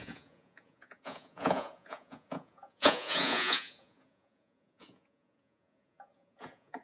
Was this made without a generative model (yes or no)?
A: no